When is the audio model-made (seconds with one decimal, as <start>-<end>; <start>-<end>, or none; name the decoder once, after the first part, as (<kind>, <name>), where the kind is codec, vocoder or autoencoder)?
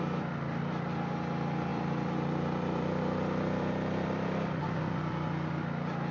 1.7-4.6 (vocoder, BigVGAN v2)